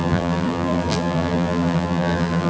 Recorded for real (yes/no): no